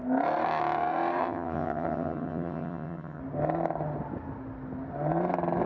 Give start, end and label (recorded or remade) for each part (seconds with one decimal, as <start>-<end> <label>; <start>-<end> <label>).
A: 0.0-1.2 recorded; 1.2-3.2 remade; 3.2-5.7 recorded